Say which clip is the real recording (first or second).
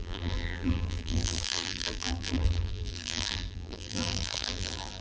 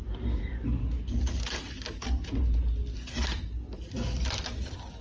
second